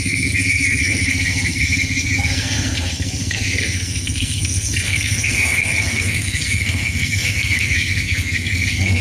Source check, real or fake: fake